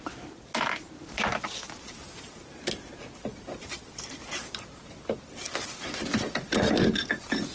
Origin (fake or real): real